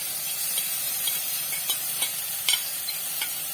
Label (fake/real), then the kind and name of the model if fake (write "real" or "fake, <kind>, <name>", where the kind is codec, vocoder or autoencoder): fake, vocoder, BigVGAN v2